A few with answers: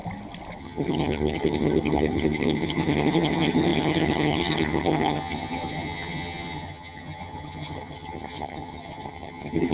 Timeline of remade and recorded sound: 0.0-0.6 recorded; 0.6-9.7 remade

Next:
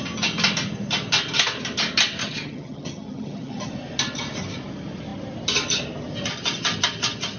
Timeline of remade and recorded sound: 0.0-2.2 recorded; 2.2-3.7 remade; 3.7-7.4 recorded

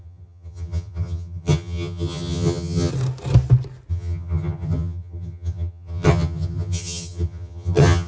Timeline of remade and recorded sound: 0.0-2.9 remade; 2.9-3.9 recorded; 3.9-8.1 remade

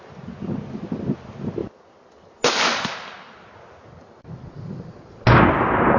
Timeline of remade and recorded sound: 0.0-6.0 recorded

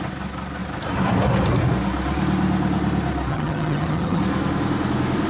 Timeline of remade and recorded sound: 0.0-3.3 recorded; 3.3-4.2 remade; 4.2-5.3 recorded